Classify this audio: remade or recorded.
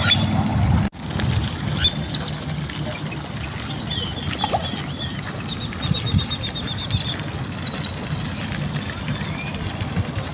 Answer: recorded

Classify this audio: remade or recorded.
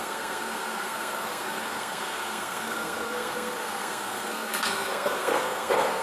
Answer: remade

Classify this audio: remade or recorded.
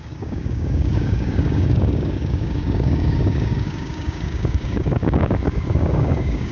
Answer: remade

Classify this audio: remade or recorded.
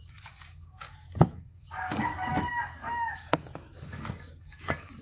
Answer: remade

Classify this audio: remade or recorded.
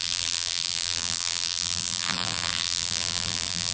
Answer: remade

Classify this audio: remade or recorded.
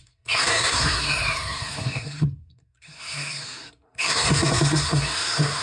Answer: remade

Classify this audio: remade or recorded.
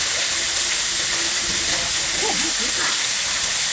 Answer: recorded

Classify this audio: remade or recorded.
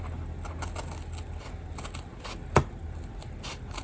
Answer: recorded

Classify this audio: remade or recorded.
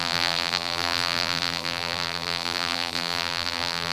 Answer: remade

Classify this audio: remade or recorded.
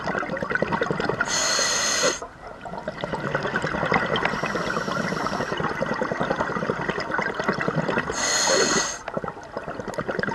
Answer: recorded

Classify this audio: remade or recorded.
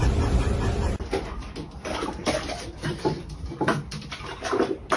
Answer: remade